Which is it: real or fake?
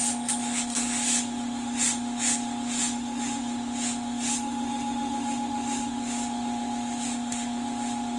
fake